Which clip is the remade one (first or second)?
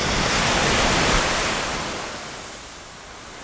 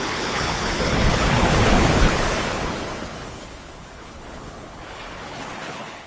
second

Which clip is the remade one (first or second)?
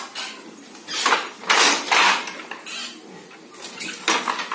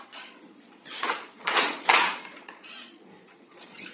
second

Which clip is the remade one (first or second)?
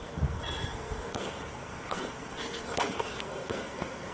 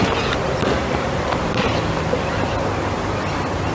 first